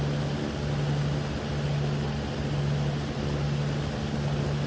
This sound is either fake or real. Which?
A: real